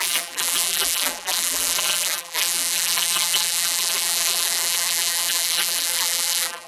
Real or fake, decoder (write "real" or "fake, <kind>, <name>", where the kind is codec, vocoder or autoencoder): fake, vocoder, BigVGAN v2